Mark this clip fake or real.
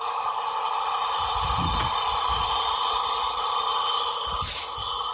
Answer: real